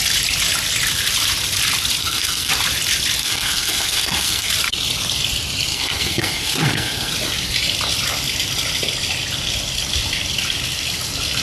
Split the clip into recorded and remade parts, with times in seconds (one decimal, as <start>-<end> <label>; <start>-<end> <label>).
0.0-2.0 recorded; 2.0-2.5 remade; 2.5-3.2 recorded; 3.2-4.5 remade; 4.5-5.7 recorded; 5.7-7.1 remade; 7.1-11.4 recorded